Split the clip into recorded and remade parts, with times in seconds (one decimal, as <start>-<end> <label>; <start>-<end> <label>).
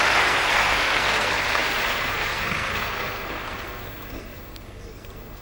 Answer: 0.0-5.4 remade